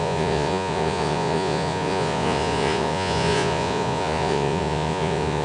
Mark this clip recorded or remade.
remade